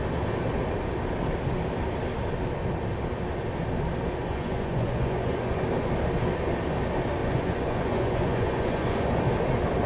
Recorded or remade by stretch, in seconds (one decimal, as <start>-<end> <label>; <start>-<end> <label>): 0.0-4.2 recorded; 4.2-5.6 remade; 5.6-7.2 recorded; 7.2-9.2 remade; 9.2-9.9 recorded